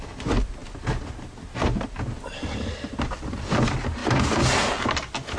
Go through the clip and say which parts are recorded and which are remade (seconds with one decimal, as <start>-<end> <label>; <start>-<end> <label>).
0.0-5.4 recorded